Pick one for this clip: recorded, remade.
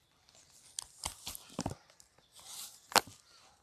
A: remade